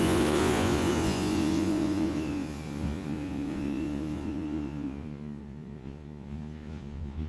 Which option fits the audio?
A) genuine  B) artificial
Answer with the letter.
B